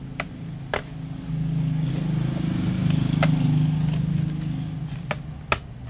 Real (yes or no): yes